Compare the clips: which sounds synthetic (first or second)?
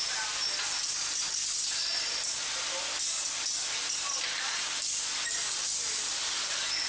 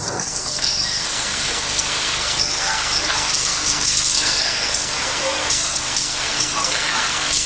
second